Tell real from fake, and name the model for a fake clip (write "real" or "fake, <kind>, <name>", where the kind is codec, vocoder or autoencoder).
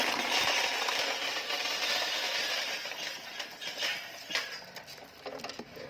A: real